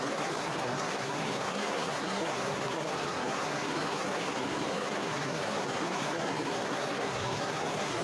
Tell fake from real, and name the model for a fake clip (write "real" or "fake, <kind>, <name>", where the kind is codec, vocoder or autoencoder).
fake, codec, SNAC